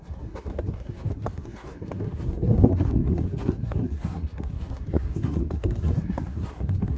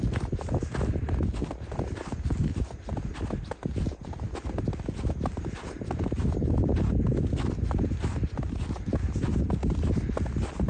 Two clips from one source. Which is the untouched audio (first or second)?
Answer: second